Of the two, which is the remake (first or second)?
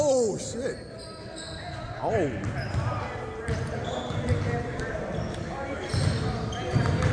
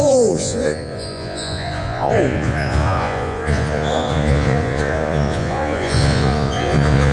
second